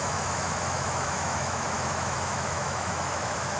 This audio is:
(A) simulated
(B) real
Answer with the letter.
A